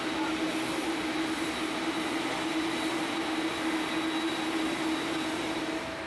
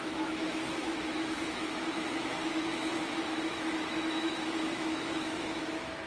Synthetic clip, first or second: second